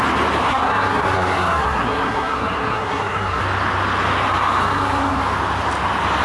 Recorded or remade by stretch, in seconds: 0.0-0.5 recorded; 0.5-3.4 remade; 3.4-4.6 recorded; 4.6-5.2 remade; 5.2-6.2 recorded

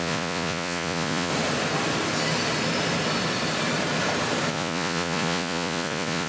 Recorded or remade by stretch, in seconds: 0.0-1.3 remade; 1.3-4.5 recorded; 4.5-6.3 remade

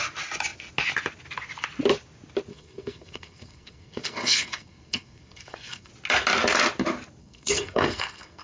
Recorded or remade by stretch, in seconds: 0.0-2.5 recorded; 2.5-5.9 remade; 5.9-7.2 recorded; 7.2-8.4 remade

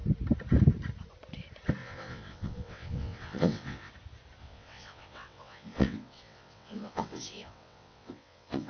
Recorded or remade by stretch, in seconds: 0.0-1.8 recorded; 1.8-3.9 remade; 3.9-4.4 recorded; 4.4-8.7 remade

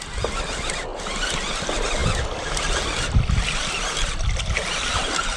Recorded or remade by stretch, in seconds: 0.0-0.9 recorded; 0.9-1.6 remade; 1.6-5.4 recorded